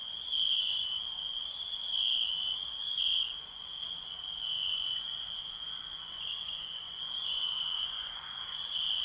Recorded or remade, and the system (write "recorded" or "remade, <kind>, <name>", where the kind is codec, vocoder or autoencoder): remade, vocoder, Vocos